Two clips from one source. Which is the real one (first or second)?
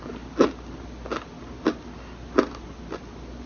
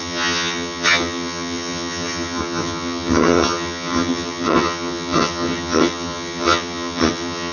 first